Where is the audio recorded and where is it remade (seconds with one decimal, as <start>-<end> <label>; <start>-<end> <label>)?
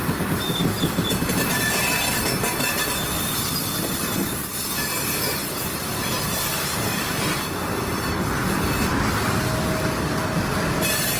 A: 0.0-11.2 recorded